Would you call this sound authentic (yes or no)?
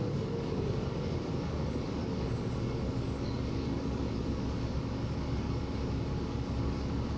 no